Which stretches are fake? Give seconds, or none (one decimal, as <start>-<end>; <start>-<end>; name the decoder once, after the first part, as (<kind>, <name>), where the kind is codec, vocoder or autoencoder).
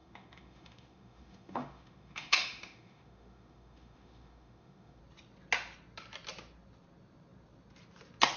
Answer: 0.0-5.0 (autoencoder, DAC-VAE)